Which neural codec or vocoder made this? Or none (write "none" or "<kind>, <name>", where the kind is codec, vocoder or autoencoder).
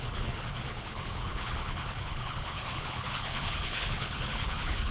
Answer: codec, HILCodec